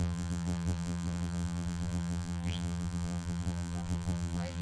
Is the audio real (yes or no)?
no